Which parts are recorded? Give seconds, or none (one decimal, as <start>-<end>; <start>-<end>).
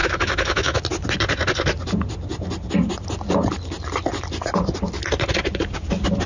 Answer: 0.8-6.3